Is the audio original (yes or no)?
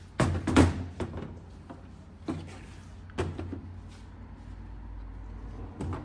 yes